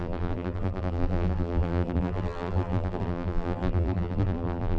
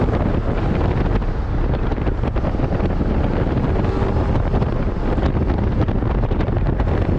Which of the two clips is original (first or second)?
second